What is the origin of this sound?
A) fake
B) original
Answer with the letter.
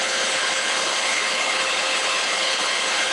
A